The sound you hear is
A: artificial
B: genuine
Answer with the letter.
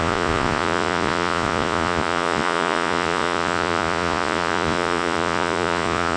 A